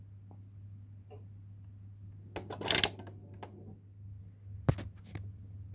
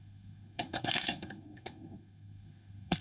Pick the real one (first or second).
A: first